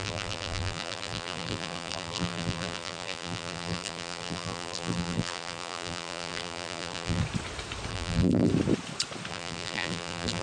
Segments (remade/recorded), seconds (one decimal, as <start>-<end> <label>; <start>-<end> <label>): 0.0-7.2 remade; 7.2-7.9 recorded; 7.9-8.5 remade; 8.5-9.3 recorded; 9.3-10.4 remade